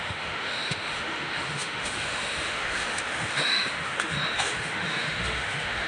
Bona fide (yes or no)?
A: no